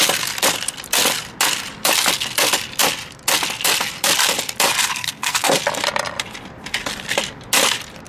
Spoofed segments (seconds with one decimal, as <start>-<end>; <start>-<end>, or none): 4.9-5.5